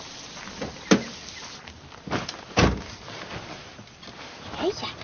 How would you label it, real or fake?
real